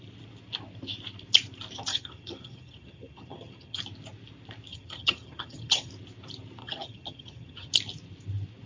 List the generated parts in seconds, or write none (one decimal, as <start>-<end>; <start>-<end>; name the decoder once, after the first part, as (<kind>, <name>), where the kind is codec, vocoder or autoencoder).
1.9-3.8 (vocoder, HiFi-GAN); 4.7-5.9; 6.6-7.7